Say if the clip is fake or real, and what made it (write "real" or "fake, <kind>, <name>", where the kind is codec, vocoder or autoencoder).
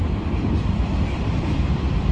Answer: fake, vocoder, BigVGAN v2